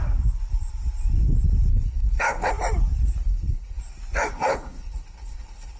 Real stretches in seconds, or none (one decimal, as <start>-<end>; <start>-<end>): 0.0-1.7; 2.5-3.2; 3.8-4.3